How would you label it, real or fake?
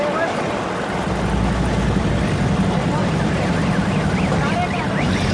real